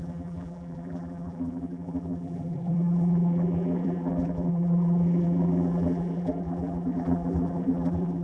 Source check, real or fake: fake